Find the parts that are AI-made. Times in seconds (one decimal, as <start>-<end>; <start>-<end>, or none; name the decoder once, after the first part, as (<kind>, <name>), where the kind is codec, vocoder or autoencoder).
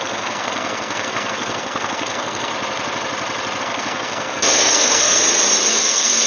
0.0-2.5 (codec, SNAC); 3.6-5.2; 5.7-6.3